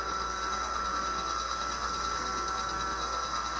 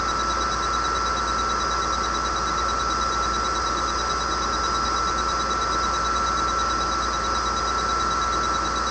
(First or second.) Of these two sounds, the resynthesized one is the first